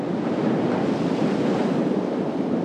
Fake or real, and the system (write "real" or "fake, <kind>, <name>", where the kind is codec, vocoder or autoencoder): real